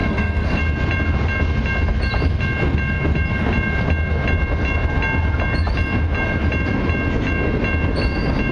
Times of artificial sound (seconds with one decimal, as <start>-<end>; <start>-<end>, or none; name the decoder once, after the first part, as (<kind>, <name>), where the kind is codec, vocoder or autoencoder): 0.0-0.6 (codec, SNAC)